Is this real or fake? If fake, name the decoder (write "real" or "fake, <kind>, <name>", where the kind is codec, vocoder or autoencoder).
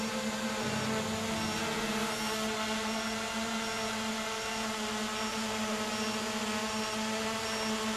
real